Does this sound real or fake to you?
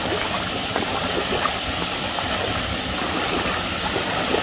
real